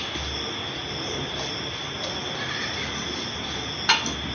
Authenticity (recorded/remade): recorded